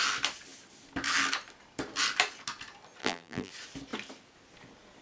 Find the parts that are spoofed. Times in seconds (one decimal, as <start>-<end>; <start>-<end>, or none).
3.0-3.5